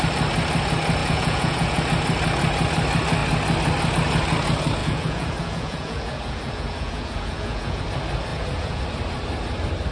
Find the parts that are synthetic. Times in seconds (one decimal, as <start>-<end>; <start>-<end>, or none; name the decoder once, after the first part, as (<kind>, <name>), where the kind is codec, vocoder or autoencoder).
1.0-1.8 (vocoder, Vocos); 4.8-7.8; 8.3-8.8